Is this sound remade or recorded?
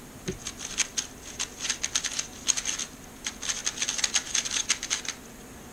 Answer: recorded